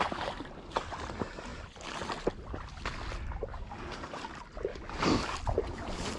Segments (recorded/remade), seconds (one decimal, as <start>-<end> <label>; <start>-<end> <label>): 0.0-3.5 recorded; 3.5-4.2 remade; 4.2-4.7 recorded; 4.7-5.4 remade; 5.4-6.2 recorded